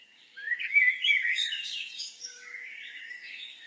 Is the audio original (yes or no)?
no